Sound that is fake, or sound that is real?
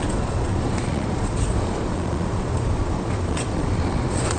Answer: fake